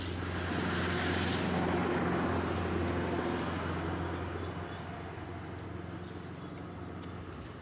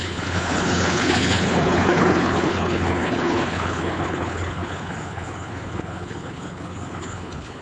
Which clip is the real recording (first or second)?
first